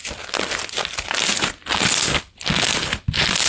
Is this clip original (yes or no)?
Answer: yes